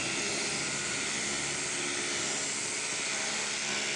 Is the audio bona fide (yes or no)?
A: yes